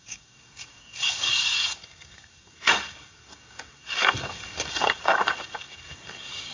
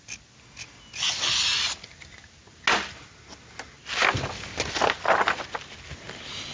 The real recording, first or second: second